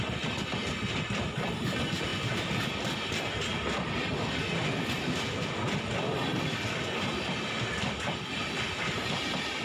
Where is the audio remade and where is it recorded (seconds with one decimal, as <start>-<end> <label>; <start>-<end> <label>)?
0.0-9.6 recorded